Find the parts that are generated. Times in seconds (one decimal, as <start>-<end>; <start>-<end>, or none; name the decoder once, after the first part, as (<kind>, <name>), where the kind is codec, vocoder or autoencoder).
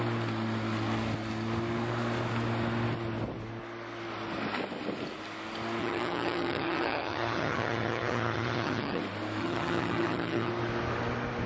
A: 5.8-9.0 (vocoder, HiFi-GAN); 9.4-10.5